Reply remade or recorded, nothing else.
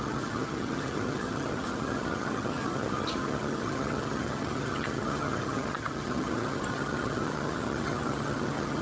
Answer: remade